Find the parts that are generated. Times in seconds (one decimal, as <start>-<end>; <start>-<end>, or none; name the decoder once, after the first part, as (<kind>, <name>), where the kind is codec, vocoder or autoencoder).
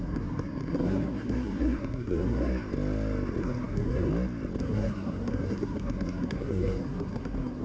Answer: 0.0-2.5 (codec, SNAC); 3.4-4.1; 4.6-7.6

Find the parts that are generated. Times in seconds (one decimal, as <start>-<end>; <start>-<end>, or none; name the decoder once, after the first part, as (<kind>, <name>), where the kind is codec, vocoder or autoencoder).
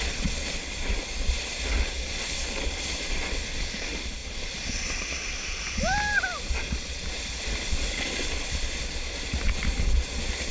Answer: none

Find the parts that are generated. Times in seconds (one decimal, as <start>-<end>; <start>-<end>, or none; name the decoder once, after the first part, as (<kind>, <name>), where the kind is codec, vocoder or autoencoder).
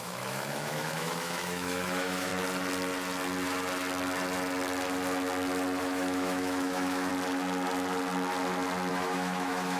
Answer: 0.0-2.3 (autoencoder, DAC-VAE); 5.8-7.1; 8.9-9.8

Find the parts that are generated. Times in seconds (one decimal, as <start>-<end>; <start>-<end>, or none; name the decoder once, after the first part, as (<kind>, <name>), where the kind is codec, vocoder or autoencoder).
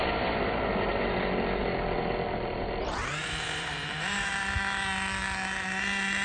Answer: 2.6-4.3 (vocoder, BigVGAN v2)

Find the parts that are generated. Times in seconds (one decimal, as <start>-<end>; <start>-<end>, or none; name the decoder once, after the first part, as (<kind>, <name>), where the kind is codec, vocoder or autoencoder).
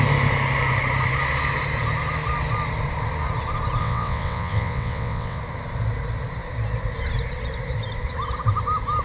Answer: 3.8-5.4 (vocoder, WaveNeXt)